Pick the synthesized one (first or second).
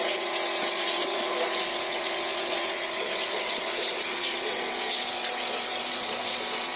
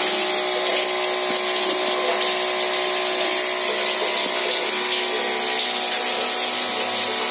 first